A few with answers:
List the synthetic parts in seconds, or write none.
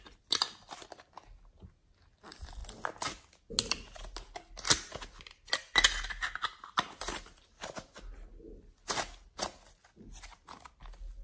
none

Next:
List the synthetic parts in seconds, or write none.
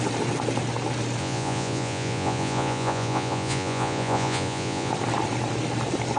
1.2-4.9 (vocoder, Vocos)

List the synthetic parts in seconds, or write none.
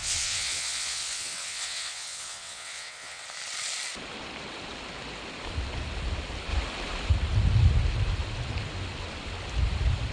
0.0-3.2 (vocoder, WaveNeXt)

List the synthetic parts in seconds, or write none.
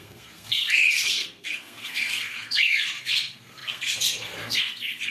0.0-5.1 (codec, SNAC)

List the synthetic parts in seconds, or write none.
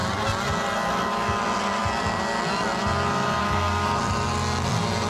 3.4-4.0 (codec, SNAC)